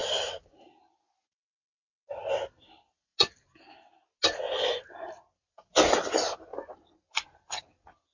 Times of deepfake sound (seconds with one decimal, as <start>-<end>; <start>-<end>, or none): 6.5-7.6